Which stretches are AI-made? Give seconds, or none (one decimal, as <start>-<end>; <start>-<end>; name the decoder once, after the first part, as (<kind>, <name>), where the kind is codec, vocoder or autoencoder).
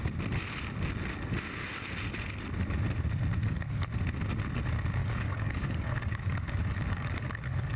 3.4-3.9 (codec, DAC); 5.0-7.8